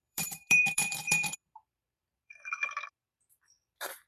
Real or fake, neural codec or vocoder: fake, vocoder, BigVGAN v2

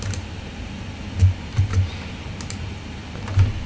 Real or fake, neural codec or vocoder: real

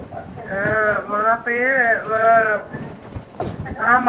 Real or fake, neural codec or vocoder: fake, vocoder, Vocos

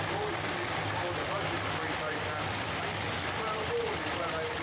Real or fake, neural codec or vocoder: real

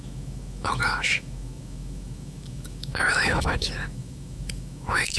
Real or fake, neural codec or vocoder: fake, autoencoder, DAC-VAE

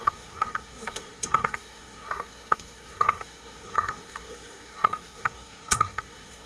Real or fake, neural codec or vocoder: fake, codec, SNAC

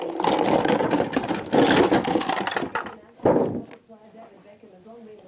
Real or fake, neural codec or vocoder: real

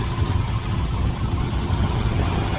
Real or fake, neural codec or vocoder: fake, vocoder, HiFi-GAN